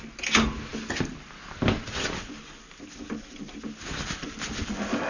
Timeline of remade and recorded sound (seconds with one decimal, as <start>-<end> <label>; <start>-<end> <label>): 0.0-5.1 recorded